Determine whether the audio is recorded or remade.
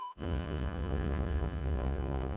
remade